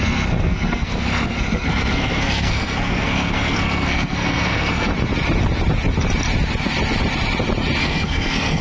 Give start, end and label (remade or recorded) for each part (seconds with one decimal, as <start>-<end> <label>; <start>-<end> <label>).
0.0-4.9 remade; 4.9-7.8 recorded; 7.8-8.6 remade